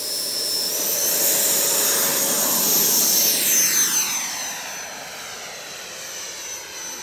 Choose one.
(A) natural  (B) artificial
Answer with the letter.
A